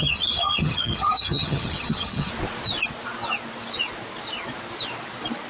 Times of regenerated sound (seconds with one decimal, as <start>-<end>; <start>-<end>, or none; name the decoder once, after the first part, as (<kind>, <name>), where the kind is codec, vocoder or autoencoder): 0.0-2.3 (vocoder, HiFi-GAN)